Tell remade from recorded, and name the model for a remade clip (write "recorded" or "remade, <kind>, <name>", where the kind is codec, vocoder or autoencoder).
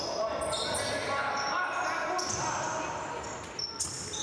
recorded